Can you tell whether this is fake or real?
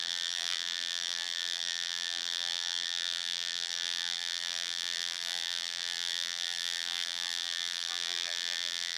fake